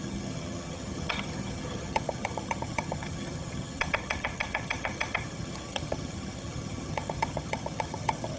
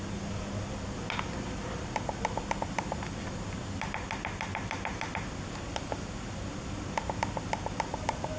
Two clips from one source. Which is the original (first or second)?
second